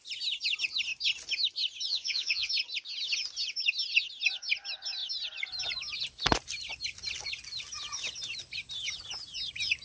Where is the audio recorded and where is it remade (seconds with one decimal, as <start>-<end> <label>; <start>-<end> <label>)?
0.0-1.9 recorded; 1.9-2.5 remade; 2.5-9.8 recorded